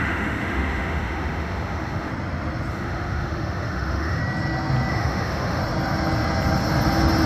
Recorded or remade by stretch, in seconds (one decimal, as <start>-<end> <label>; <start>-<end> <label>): 0.0-2.1 remade; 2.1-2.7 recorded; 2.7-4.2 remade; 4.2-4.9 recorded; 4.9-5.6 remade; 5.6-7.3 recorded